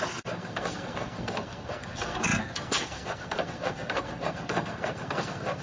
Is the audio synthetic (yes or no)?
yes